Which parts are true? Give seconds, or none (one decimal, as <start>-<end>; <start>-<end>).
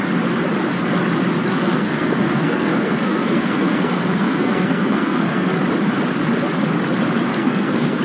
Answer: 0.0-1.5; 5.6-7.3